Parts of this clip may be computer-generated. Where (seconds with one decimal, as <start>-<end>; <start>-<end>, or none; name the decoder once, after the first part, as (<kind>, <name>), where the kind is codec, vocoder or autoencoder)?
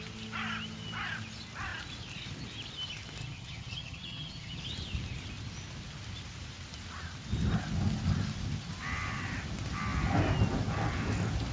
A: 3.2-4.6 (vocoder, HiFi-GAN)